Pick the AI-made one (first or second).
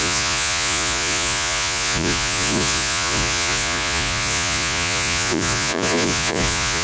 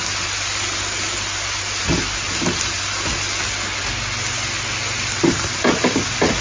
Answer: first